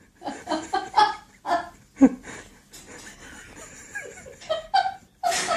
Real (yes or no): yes